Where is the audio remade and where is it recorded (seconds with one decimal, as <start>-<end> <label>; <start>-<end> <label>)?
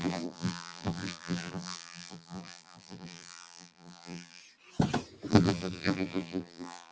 0.0-4.4 remade; 4.4-5.3 recorded; 5.3-6.9 remade